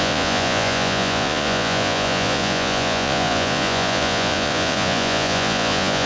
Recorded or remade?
remade